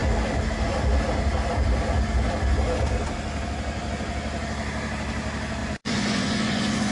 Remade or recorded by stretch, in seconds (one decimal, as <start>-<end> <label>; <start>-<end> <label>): 0.0-5.6 recorded; 5.6-6.9 remade